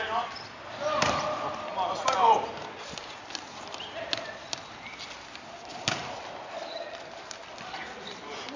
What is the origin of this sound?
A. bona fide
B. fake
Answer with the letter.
A